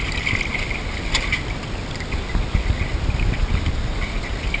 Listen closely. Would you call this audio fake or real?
real